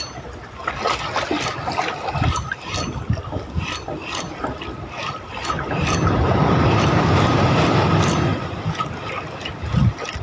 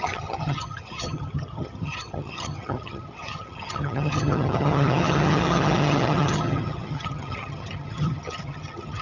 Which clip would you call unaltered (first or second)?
first